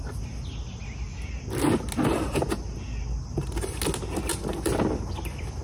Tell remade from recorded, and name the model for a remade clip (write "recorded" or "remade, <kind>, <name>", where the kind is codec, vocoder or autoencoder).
recorded